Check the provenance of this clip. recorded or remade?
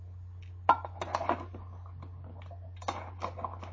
recorded